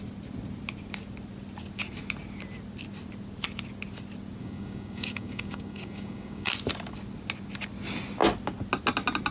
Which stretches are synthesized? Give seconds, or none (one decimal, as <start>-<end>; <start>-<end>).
4.4-6.5